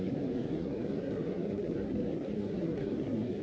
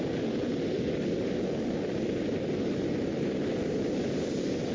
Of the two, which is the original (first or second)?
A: second